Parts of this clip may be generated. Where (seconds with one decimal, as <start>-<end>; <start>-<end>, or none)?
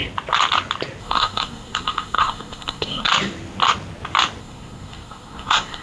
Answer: 1.0-3.1; 4.4-5.8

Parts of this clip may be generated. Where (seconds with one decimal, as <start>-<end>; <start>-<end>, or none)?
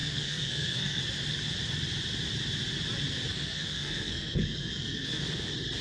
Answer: 0.0-1.0; 3.3-5.2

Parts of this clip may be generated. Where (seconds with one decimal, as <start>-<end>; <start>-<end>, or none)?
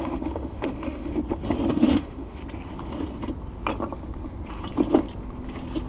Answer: 0.0-1.1; 1.7-2.4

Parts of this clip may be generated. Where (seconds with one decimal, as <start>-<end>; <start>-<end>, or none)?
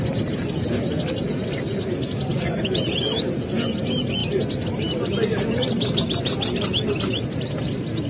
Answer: none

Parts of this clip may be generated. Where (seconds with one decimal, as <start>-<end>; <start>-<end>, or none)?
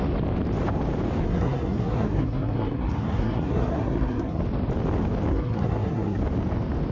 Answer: 1.2-4.4; 5.3-6.2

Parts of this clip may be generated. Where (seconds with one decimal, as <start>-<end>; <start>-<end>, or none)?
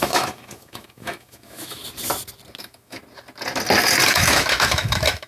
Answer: 0.0-1.8; 2.6-3.0; 4.1-5.3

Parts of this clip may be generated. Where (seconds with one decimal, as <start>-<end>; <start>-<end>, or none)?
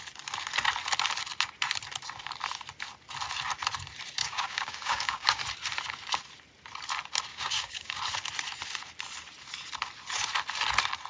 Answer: 4.2-5.4; 7.3-8.0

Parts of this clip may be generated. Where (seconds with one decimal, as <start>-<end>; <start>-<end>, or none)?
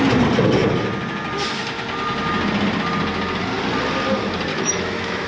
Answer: 4.5-5.3